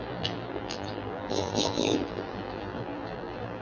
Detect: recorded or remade remade